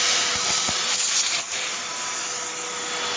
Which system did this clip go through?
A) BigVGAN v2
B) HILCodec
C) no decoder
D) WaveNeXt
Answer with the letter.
C